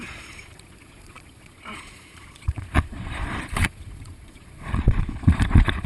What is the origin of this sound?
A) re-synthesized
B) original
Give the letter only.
A